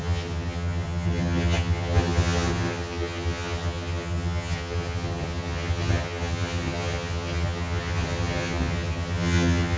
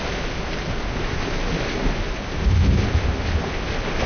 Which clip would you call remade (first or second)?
first